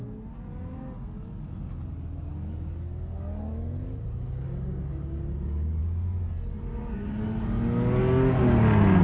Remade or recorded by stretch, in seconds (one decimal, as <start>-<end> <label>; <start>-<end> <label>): 0.0-9.0 recorded